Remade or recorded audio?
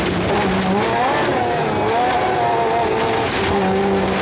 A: recorded